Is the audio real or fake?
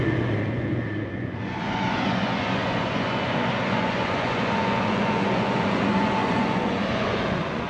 fake